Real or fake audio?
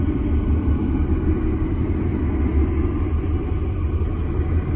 real